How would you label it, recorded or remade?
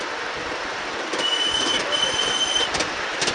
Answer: recorded